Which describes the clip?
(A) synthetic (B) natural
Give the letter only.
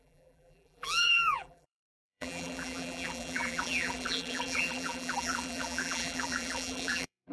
A